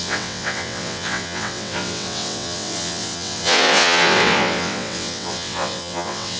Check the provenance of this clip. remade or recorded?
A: remade